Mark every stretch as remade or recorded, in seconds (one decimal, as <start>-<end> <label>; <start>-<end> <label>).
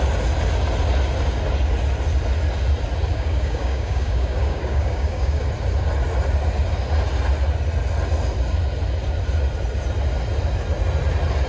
0.0-3.1 recorded; 3.1-5.4 remade; 5.4-11.5 recorded